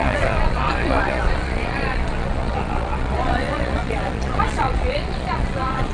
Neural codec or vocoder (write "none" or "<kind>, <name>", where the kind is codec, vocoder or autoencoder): vocoder, Vocos